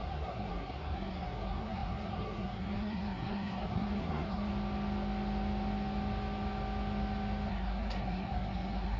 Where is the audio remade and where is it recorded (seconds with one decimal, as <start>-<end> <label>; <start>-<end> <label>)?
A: 0.0-4.5 remade; 4.5-7.5 recorded; 7.5-9.0 remade